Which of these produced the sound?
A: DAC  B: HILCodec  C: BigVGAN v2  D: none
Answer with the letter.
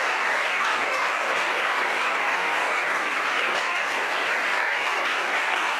A